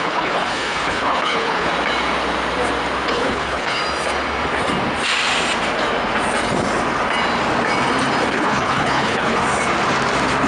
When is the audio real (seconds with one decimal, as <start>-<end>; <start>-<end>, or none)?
1.7-3.1; 3.8-8.3; 9.4-10.5